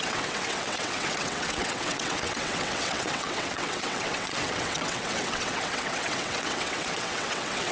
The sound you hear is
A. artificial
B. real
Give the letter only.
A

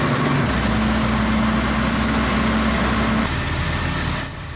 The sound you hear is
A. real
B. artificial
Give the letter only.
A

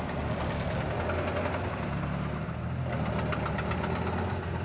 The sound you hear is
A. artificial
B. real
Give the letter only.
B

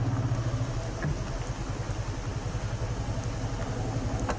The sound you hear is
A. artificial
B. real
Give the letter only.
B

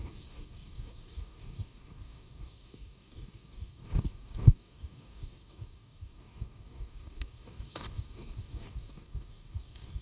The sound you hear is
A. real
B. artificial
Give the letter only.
B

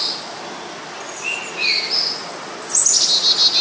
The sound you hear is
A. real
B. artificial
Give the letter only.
A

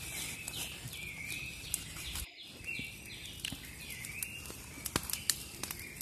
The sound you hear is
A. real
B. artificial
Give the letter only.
A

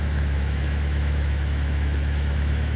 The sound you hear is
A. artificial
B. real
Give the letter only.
A